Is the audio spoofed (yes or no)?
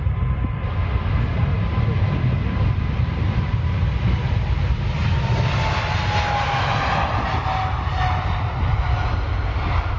no